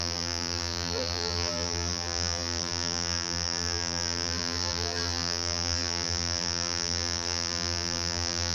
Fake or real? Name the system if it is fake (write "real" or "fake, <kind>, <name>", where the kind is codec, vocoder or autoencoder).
fake, vocoder, BigVGAN v2